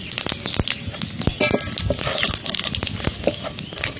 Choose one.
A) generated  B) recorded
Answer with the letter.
B